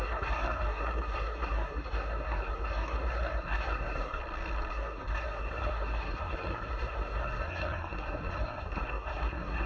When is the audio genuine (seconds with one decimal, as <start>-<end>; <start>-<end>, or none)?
4.2-4.7